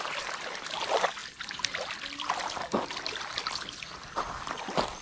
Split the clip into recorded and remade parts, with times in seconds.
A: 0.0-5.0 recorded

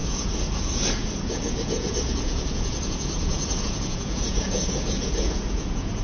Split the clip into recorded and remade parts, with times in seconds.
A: 0.0-6.0 remade